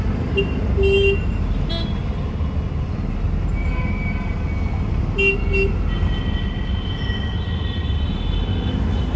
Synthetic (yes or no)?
no